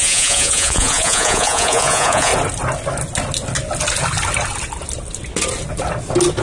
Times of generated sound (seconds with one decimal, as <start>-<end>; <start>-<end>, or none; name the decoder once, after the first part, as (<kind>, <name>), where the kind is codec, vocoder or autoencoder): 0.0-2.3 (vocoder, Vocos)

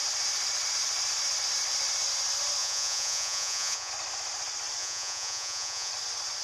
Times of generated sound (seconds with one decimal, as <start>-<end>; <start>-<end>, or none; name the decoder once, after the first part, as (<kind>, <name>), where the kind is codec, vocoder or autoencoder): 2.6-3.9 (vocoder, Vocos); 4.8-5.9

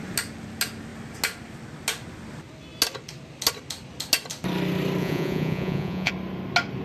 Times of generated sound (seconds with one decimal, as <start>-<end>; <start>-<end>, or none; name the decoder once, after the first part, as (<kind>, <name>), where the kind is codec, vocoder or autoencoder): 5.0-6.1 (vocoder, Vocos)

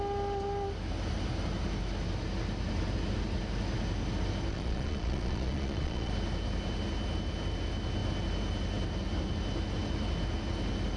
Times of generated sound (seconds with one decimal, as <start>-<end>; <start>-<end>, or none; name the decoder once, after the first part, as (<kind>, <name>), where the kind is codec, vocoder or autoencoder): 4.5-6.1 (vocoder, Vocos)

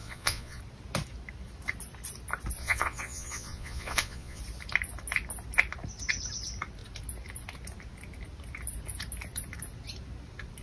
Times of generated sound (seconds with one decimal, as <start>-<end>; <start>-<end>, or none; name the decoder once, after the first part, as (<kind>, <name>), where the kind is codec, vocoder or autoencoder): 0.0-0.6 (vocoder, Vocos); 2.6-4.4

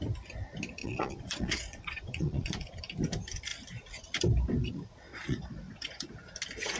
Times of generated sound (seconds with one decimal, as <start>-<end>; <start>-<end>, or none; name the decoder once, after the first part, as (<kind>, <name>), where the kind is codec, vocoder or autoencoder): 0.8-2.8 (vocoder, Vocos); 5.1-6.1

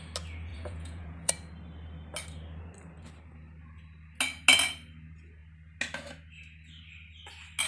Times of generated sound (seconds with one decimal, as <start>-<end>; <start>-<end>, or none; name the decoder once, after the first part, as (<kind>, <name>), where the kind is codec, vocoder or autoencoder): 0.5-1.3 (vocoder, Vocos)

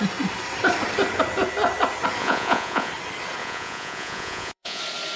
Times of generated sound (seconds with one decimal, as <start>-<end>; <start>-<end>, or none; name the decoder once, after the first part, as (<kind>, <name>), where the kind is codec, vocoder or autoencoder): 2.2-2.9 (vocoder, Vocos); 3.4-4.8